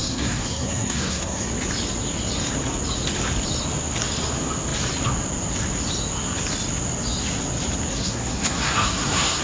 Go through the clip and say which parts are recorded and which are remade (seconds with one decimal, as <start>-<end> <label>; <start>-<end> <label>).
0.0-1.5 remade; 1.5-7.9 recorded; 7.9-9.4 remade